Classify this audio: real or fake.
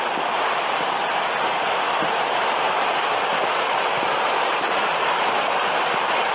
fake